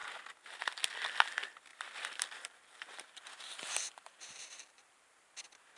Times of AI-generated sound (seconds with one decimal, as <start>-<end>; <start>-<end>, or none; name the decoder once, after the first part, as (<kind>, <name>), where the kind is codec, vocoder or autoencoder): 1.7-5.2 (vocoder, BigVGAN v2)